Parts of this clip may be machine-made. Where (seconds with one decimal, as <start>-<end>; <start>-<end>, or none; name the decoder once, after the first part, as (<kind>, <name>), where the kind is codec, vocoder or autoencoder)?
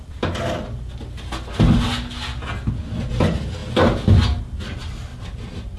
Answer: 5.1-5.8 (vocoder, BigVGAN v2)